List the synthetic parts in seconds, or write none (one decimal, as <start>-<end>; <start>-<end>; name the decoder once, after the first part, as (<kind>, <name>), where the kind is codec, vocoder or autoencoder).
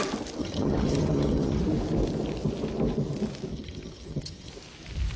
0.4-1.6 (vocoder, HiFi-GAN); 3.5-4.5